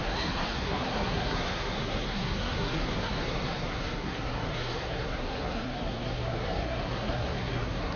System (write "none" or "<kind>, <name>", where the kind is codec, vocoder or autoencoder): codec, SNAC